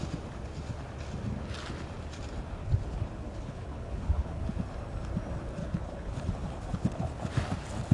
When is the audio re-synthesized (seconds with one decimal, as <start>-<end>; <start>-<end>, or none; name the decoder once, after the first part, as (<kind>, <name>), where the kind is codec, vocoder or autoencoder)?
2.6-4.4 (codec, HILCodec); 5.6-7.1